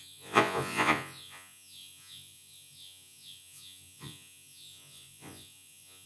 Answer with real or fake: fake